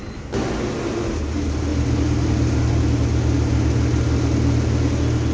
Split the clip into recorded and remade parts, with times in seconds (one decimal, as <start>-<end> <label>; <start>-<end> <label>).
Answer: 0.0-5.3 recorded